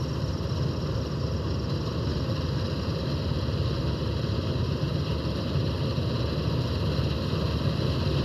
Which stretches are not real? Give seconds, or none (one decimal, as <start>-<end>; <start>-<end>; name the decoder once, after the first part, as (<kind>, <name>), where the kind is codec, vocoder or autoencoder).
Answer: 2.1-3.1 (vocoder, BigVGAN v2)